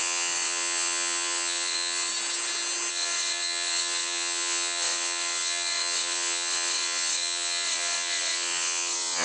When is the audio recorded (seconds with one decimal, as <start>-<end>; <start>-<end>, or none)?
2.1-2.9